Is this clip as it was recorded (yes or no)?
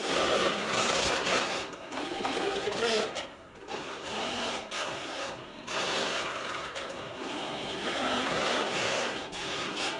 no